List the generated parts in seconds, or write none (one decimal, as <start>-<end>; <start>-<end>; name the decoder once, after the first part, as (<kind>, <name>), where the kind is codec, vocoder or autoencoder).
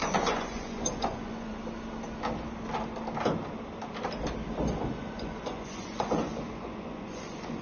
0.0-1.6 (vocoder, Vocos); 4.7-7.6